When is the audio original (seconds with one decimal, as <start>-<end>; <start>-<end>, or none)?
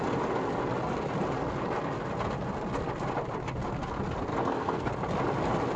0.0-4.3; 4.9-5.8